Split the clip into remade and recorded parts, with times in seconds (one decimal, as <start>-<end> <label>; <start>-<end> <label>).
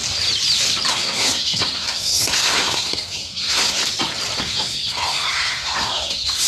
0.0-0.9 recorded; 0.9-3.8 remade; 3.8-4.4 recorded; 4.4-6.5 remade